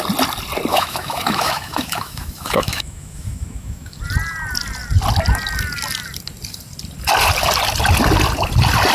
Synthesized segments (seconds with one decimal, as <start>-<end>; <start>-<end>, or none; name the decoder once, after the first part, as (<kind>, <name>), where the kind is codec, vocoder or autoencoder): 0.7-4.0 (autoencoder, DAC-VAE)